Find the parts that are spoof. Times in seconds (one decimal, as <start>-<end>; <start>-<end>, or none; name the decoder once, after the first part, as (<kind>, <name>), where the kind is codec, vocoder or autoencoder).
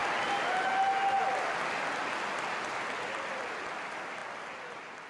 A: none